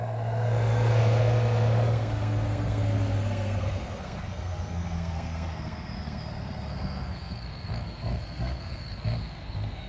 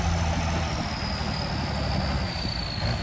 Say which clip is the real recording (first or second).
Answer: second